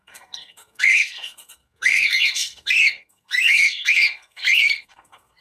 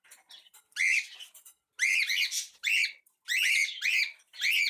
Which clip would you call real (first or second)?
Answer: second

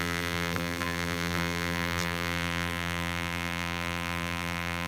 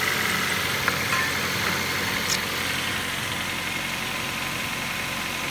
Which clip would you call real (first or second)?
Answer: second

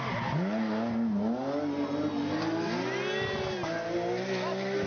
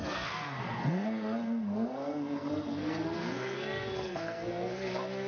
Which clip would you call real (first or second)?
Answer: first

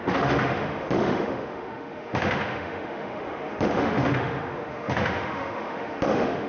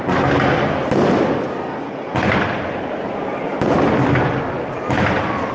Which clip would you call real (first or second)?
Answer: second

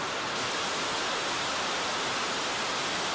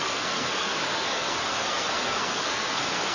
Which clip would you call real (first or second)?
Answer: first